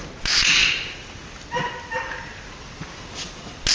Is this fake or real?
real